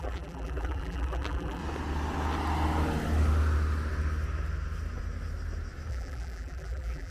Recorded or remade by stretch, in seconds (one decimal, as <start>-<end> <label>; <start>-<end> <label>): 0.0-1.6 remade; 1.6-5.9 recorded; 5.9-7.1 remade